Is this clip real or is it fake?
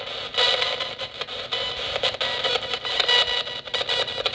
real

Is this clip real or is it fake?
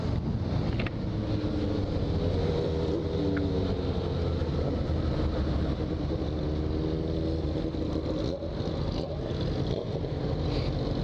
real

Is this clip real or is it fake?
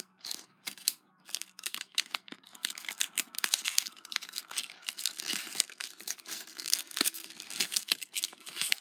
fake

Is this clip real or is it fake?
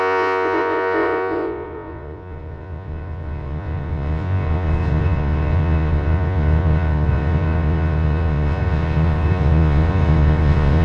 fake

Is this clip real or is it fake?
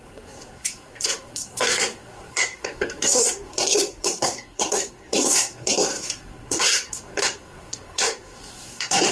fake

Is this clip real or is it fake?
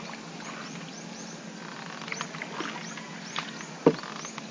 real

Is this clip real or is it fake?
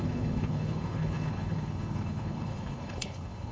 fake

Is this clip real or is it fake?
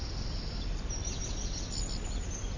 real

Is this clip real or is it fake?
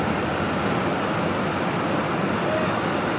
real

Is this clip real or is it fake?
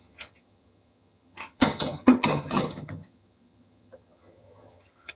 fake